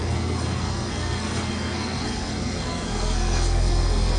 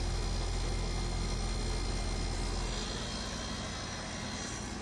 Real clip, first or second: second